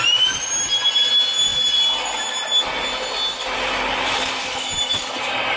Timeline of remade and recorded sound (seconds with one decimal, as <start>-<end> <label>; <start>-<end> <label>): 0.0-5.6 recorded